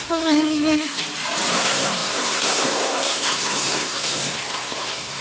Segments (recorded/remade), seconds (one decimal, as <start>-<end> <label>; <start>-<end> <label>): 0.0-1.0 remade; 1.0-1.5 recorded; 1.5-5.2 remade